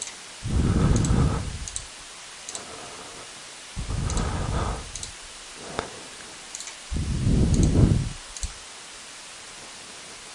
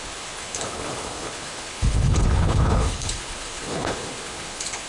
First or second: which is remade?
second